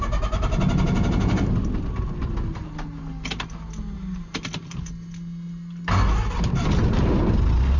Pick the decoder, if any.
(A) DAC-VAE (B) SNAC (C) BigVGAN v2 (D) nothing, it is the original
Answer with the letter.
D